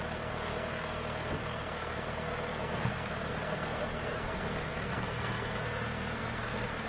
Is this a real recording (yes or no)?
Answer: no